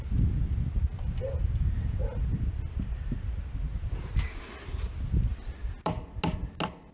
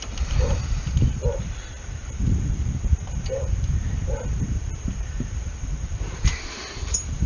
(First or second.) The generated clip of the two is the second